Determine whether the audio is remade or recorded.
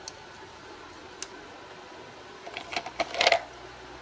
recorded